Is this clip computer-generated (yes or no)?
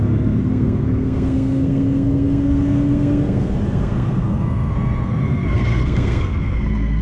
yes